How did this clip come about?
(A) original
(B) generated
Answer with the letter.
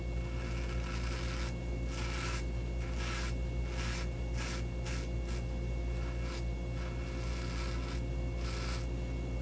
A